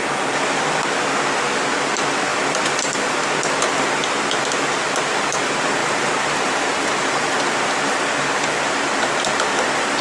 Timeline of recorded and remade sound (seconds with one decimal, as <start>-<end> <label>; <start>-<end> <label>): 0.0-2.3 recorded; 2.3-3.5 remade; 3.5-5.8 recorded; 5.8-8.2 remade; 8.2-10.0 recorded